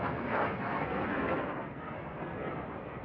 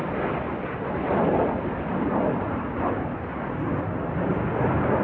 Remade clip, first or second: first